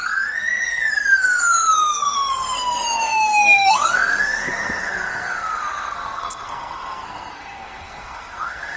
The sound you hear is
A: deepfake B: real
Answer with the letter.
A